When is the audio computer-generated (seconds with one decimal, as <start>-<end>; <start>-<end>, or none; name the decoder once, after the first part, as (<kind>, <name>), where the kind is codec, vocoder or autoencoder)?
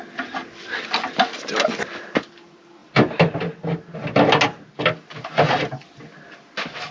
none